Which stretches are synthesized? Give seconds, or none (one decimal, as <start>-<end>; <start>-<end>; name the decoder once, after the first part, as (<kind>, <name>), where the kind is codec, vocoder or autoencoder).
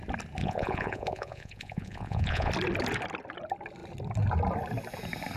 0.4-2.5 (vocoder, Vocos)